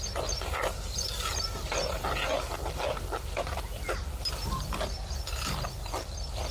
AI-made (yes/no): no